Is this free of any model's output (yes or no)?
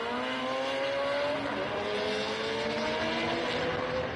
yes